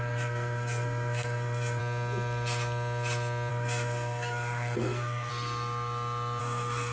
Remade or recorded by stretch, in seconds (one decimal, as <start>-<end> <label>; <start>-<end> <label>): 0.0-1.8 remade; 1.8-3.5 recorded; 3.5-5.3 remade; 5.3-6.4 recorded; 6.4-6.9 remade